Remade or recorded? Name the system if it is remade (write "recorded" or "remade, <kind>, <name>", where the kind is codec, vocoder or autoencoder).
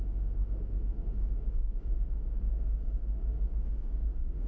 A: remade, autoencoder, DAC-VAE